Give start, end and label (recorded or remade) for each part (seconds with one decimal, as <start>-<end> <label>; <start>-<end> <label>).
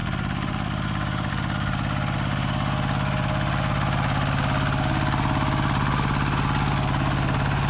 0.0-1.3 remade; 1.3-7.7 recorded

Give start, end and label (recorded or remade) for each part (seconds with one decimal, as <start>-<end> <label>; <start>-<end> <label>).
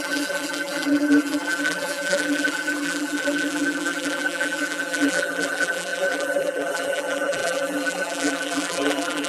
0.0-9.3 remade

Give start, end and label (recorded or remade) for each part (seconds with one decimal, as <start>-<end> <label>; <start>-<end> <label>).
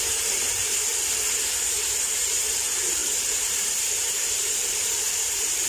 0.0-0.9 remade; 0.9-2.1 recorded; 2.1-5.7 remade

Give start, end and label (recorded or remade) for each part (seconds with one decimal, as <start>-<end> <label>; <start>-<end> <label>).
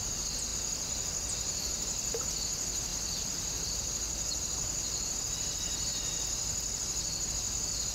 0.0-0.5 recorded; 0.5-2.1 remade; 2.1-2.9 recorded; 2.9-5.2 remade; 5.2-7.9 recorded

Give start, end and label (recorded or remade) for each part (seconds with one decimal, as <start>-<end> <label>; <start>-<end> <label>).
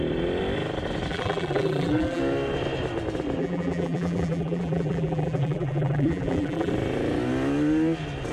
0.0-1.1 recorded; 1.1-2.2 remade; 2.2-3.4 recorded; 3.4-6.7 remade; 6.7-8.3 recorded